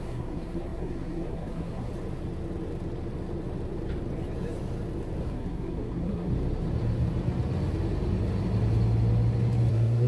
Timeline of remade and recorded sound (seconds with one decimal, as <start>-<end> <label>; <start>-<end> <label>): 0.0-1.9 remade; 1.9-5.2 recorded; 5.2-6.3 remade; 6.3-9.7 recorded; 9.7-10.1 remade